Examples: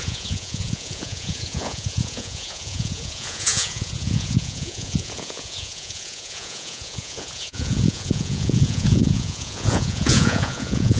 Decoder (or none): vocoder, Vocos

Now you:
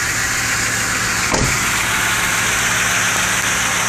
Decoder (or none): none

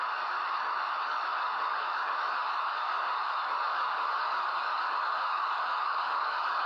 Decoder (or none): codec, DAC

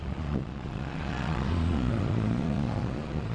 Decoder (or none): vocoder, Vocos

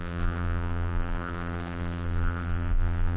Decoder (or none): vocoder, BigVGAN v2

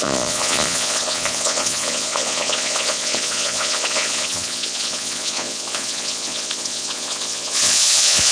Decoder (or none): vocoder, Vocos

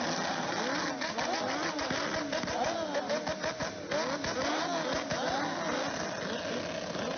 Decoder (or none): none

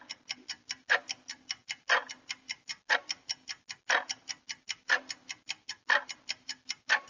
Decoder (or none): none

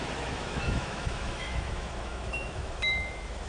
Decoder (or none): autoencoder, DAC-VAE